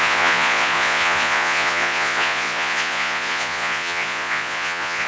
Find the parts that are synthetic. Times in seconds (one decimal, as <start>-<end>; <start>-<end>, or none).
0.0-5.1